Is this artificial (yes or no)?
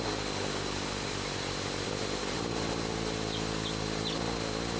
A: no